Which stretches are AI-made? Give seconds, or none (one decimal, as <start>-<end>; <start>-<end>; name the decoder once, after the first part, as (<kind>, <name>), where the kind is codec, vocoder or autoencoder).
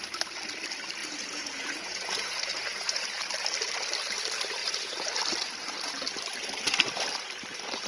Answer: 1.0-3.2 (vocoder, Vocos); 4.6-5.1